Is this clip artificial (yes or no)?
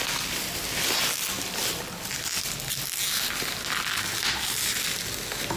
no